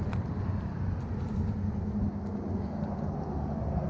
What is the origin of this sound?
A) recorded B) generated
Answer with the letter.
A